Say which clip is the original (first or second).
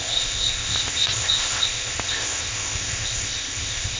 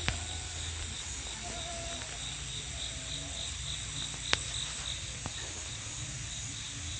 second